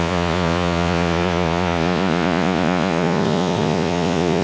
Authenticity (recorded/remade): remade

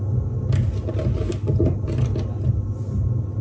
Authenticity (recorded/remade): recorded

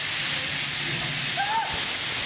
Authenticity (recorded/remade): recorded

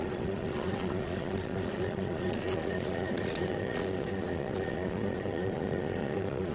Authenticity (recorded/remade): remade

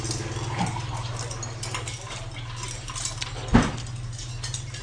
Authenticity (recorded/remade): recorded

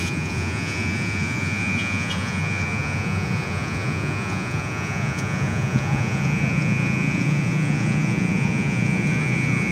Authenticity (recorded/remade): remade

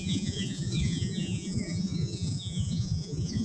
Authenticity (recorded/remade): remade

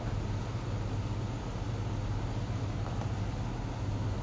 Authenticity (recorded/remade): recorded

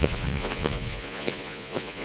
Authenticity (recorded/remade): remade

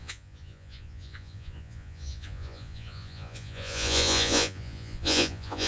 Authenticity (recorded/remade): remade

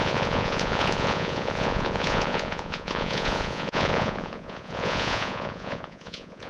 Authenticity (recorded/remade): remade